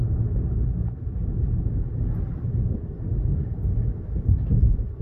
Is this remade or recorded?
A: recorded